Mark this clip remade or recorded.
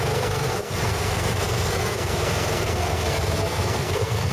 remade